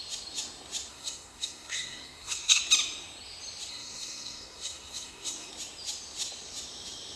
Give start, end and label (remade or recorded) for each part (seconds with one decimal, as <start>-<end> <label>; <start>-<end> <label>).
0.0-0.9 recorded; 0.9-2.6 remade; 2.6-3.7 recorded; 3.7-5.5 remade; 5.5-7.2 recorded